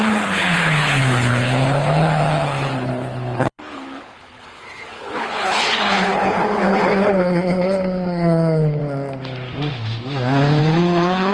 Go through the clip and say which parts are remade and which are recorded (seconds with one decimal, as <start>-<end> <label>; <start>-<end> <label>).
0.0-8.8 remade; 8.8-10.6 recorded; 10.6-11.3 remade